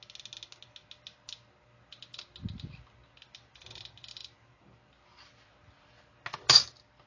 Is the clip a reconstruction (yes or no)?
no